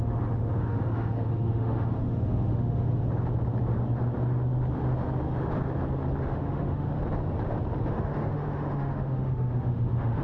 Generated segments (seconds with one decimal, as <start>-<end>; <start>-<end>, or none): 0.0-2.9; 6.3-7.0; 7.9-10.2